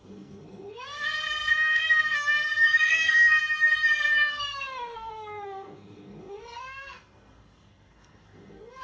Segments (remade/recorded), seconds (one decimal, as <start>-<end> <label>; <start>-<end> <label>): 0.0-8.8 remade